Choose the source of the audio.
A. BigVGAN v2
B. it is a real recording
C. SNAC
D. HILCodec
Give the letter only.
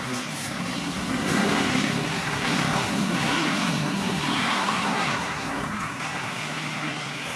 C